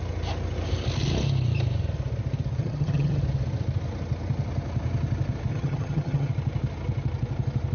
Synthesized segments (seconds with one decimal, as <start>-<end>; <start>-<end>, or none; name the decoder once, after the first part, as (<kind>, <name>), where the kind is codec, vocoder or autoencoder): 2.6-3.2 (vocoder, HiFi-GAN); 5.5-6.3